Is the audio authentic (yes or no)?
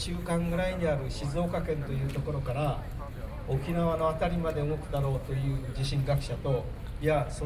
yes